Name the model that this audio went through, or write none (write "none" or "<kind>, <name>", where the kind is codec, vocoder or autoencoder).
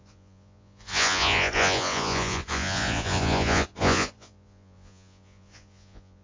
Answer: vocoder, Vocos